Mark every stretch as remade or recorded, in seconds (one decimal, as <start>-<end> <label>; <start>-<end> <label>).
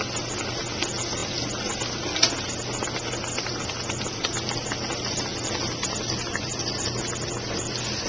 0.0-8.1 recorded